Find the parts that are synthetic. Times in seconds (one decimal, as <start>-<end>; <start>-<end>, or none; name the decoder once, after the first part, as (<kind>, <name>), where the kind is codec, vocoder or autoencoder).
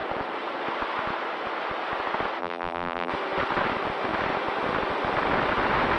2.4-3.1 (vocoder, BigVGAN v2)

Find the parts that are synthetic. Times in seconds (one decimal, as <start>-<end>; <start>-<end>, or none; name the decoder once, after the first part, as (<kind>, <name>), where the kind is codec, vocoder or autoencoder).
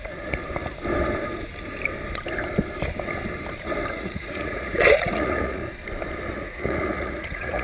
0.0-0.4 (vocoder, Vocos); 3.9-5.6; 6.3-7.6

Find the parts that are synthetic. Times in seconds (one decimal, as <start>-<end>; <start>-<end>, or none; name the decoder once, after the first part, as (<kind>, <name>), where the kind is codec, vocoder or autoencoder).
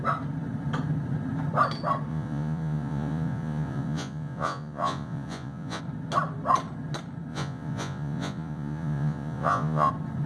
2.1-5.8 (vocoder, Vocos); 7.3-9.9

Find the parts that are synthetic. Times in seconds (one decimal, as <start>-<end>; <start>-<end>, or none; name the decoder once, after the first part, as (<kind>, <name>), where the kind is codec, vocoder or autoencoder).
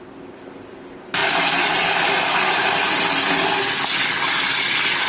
none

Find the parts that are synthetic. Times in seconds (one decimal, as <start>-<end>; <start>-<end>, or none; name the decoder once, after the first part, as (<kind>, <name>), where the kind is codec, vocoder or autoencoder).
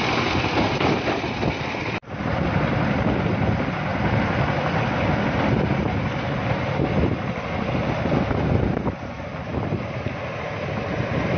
none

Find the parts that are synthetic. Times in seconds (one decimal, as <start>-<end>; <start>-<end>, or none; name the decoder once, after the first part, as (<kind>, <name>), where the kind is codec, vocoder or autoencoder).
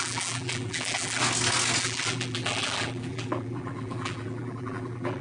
0.0-1.2 (vocoder, BigVGAN v2); 1.8-5.2